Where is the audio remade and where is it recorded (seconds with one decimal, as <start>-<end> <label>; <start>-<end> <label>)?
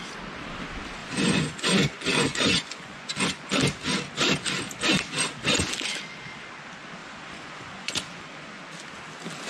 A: 0.0-1.0 recorded; 1.0-3.5 remade; 3.5-7.0 recorded; 7.0-8.6 remade; 8.6-9.5 recorded